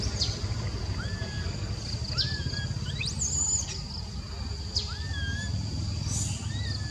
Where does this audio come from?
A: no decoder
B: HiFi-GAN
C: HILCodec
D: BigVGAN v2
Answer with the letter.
A